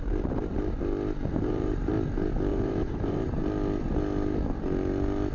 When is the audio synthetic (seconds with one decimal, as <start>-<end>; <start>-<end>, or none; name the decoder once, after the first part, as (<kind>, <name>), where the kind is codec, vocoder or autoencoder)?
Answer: 1.3-1.9 (vocoder, BigVGAN v2); 2.5-3.4